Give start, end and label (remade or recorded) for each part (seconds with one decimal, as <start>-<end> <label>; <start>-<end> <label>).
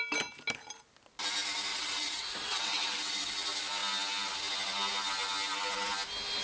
0.0-1.7 recorded; 1.7-3.3 remade; 3.3-6.4 recorded